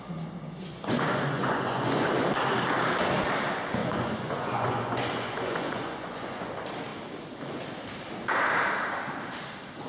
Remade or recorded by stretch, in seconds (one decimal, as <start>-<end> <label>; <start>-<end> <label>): 0.0-0.6 recorded; 0.6-2.1 remade; 2.1-3.8 recorded; 3.8-6.5 remade; 6.5-9.9 recorded

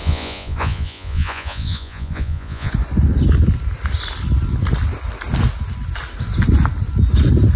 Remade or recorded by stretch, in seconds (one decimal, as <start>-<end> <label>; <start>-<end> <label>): 0.0-2.7 remade; 2.7-7.6 recorded